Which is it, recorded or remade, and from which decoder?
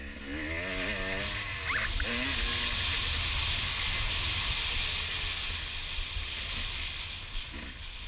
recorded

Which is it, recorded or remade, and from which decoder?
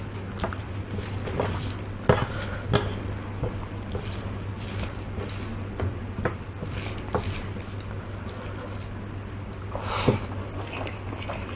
recorded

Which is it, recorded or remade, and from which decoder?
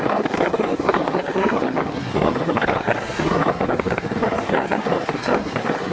remade, codec, SNAC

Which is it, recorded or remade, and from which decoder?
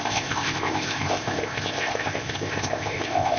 remade, codec, ZipCodec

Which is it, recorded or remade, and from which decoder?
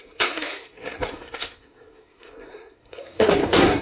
remade, codec, SNAC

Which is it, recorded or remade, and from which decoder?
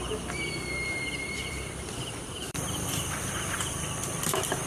remade, vocoder, BigVGAN v2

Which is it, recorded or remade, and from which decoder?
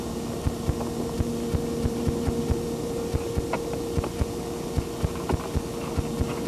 recorded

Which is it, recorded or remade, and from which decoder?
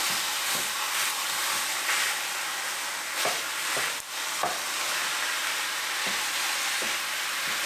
recorded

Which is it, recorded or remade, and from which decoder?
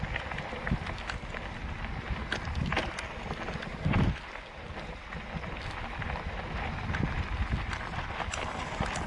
recorded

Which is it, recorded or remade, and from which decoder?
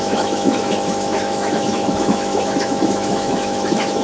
remade, autoencoder, DAC-VAE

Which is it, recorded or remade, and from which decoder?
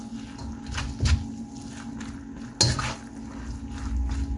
recorded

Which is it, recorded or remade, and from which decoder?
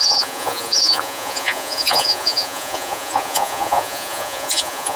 remade, vocoder, Vocos